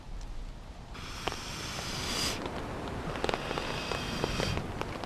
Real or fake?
real